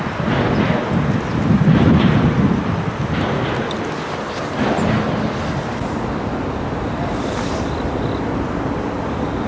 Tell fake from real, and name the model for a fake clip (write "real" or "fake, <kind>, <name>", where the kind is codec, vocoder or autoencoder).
real